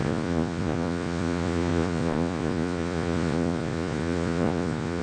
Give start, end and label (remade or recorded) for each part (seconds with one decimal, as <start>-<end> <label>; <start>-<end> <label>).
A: 0.0-5.0 remade